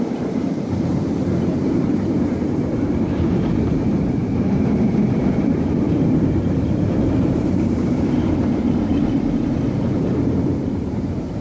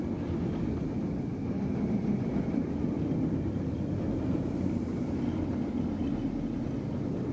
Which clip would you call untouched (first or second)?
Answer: second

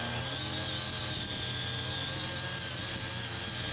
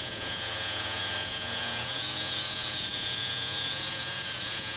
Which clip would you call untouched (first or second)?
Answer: first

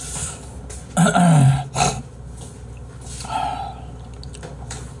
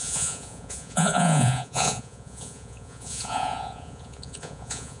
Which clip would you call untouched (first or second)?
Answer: first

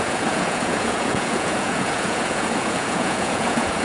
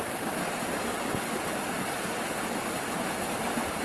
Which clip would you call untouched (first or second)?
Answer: second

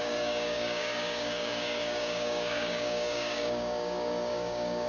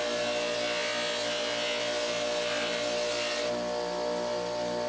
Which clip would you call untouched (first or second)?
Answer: second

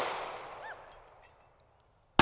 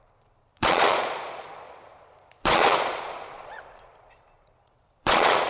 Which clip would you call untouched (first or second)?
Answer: first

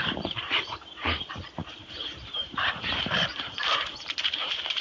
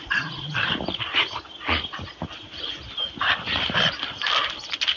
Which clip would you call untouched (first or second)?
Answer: second